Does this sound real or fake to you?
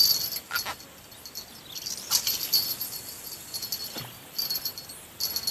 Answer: real